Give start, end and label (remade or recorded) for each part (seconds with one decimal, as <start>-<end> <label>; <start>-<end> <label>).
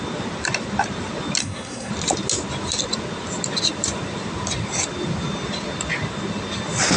0.0-1.4 recorded; 1.4-1.9 remade; 1.9-7.0 recorded